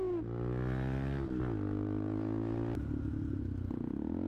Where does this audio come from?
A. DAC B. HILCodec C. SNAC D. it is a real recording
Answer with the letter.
D